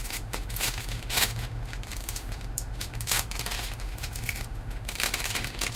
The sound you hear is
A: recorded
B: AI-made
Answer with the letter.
B